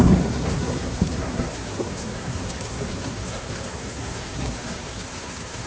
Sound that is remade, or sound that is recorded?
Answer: remade